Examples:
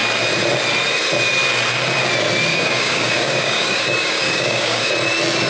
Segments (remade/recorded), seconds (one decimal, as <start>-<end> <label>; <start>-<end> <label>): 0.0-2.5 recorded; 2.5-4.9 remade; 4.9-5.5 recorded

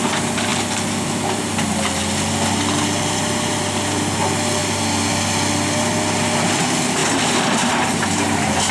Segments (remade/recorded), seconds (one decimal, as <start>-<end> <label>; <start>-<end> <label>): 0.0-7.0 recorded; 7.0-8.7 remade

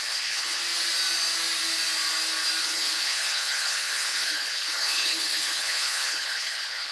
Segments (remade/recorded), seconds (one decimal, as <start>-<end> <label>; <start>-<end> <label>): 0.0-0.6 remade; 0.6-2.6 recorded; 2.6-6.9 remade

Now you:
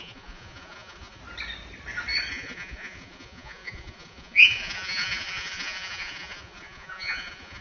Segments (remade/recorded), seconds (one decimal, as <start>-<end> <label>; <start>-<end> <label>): 0.0-1.2 remade; 1.2-2.3 recorded; 2.3-7.6 remade